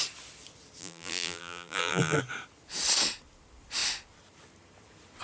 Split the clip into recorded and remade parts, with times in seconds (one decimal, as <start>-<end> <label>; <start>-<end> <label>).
0.0-0.8 recorded; 0.8-2.2 remade; 2.2-5.2 recorded